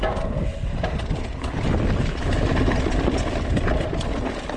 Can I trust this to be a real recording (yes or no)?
yes